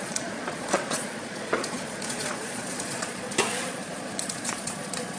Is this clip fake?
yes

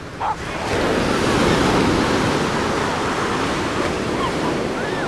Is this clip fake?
no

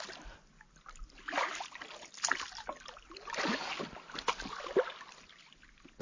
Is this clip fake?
no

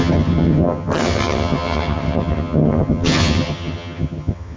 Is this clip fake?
yes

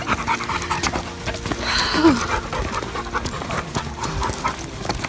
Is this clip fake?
no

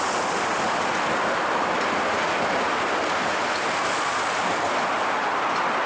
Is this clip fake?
no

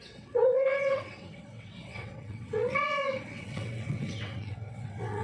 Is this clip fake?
yes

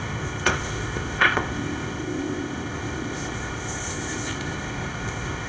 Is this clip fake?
yes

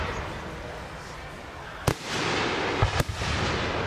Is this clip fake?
no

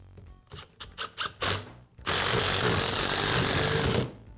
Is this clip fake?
no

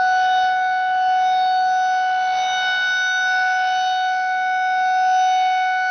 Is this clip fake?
no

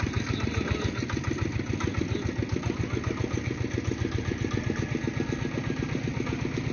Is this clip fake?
no